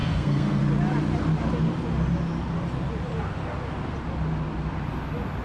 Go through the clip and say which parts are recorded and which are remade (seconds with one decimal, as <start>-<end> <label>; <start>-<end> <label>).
0.0-0.6 remade; 0.6-5.4 recorded